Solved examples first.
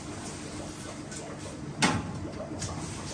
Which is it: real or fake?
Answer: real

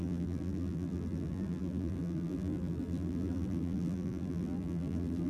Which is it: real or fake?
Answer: fake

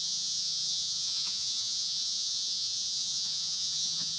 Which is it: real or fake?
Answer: fake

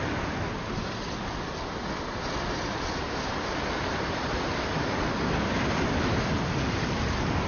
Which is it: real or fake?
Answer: real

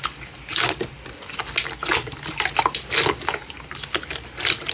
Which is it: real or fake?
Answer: real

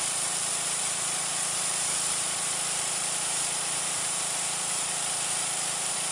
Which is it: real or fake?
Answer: fake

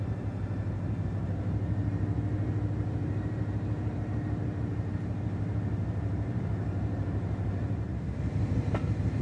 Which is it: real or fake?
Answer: fake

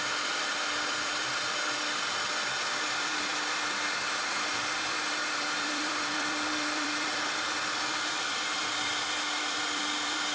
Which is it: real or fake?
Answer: fake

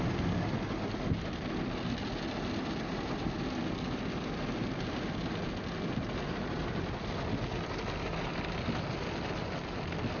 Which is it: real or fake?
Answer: real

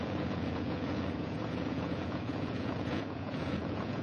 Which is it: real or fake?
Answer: fake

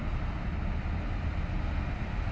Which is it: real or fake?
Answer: real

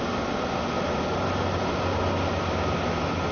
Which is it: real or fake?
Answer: real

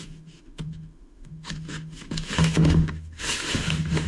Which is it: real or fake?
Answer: fake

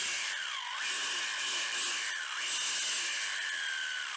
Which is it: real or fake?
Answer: real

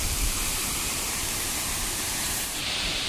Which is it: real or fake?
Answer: fake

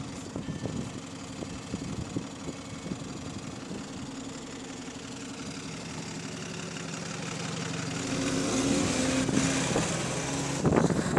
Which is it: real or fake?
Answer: real